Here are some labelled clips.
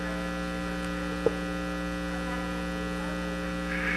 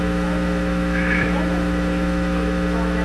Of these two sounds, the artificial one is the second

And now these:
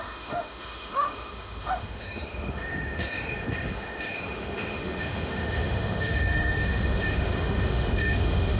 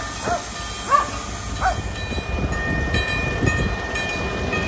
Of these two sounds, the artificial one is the first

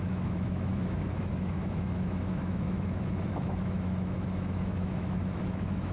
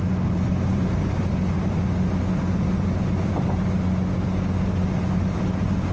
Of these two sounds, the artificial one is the first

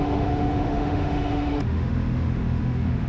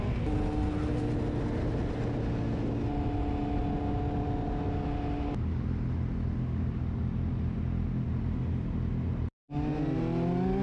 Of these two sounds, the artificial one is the first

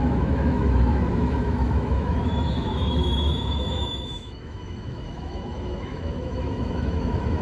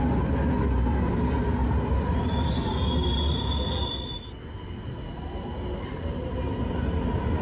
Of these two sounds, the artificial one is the first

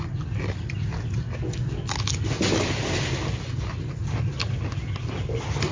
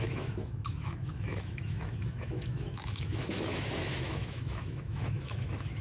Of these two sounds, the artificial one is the second